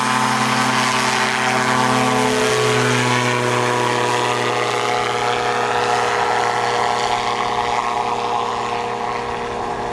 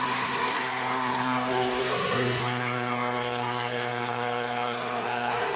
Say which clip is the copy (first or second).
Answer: second